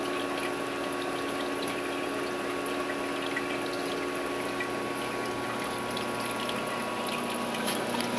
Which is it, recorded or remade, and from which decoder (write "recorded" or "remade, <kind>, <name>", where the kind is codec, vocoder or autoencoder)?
recorded